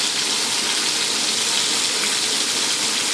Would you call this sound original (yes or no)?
yes